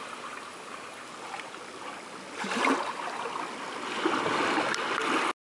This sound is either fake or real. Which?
real